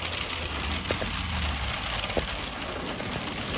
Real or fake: real